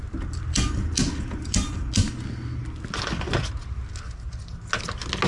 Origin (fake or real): real